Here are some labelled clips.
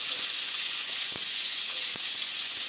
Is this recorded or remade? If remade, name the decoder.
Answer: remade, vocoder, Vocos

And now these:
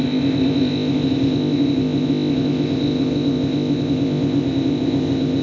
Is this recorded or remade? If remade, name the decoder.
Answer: remade, codec, ZipCodec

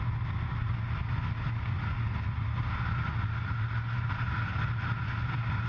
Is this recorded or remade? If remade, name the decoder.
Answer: recorded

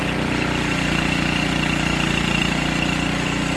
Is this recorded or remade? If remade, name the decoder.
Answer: recorded